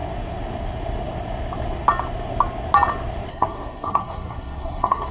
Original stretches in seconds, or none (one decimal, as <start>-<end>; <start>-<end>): 0.0-3.3